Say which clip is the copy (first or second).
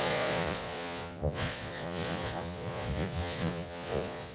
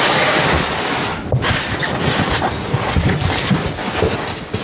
first